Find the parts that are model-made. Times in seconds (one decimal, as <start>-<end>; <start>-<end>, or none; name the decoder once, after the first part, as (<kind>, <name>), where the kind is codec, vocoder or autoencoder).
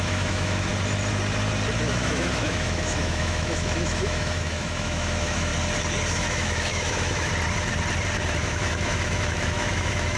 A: 0.0-0.7 (autoencoder, DAC-VAE); 1.9-5.5; 6.1-7.3; 8.4-10.2